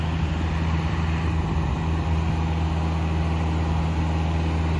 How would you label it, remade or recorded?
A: recorded